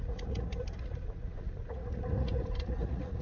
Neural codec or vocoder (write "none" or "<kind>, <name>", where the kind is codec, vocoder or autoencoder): vocoder, Vocos